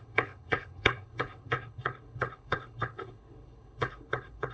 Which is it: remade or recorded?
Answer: remade